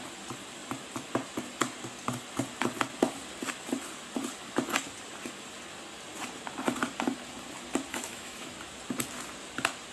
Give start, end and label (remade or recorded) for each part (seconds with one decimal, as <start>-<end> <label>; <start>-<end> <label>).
0.0-7.9 recorded; 7.9-8.5 remade; 8.5-9.9 recorded